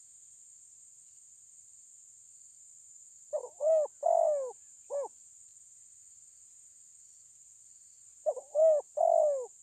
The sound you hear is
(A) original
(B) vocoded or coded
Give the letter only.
A